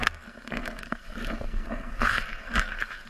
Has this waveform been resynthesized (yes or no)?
yes